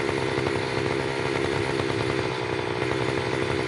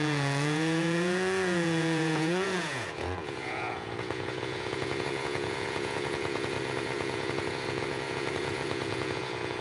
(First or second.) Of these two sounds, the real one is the first